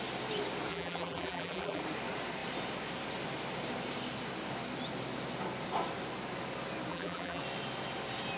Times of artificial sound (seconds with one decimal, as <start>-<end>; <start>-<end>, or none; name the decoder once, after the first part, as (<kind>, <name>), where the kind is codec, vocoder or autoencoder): 0.7-1.8 (vocoder, BigVGAN v2); 6.9-7.4